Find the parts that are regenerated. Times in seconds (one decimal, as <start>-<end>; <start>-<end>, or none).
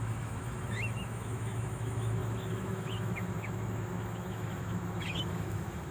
0.0-5.9